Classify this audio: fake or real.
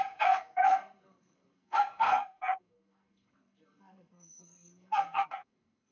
fake